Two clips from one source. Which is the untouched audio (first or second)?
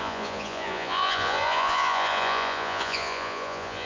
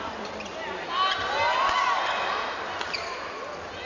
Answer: second